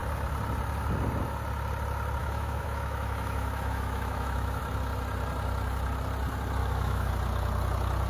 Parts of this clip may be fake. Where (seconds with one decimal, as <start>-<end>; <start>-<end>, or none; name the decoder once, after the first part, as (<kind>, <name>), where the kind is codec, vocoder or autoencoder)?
2.2-4.6 (autoencoder, DAC-VAE); 6.6-7.1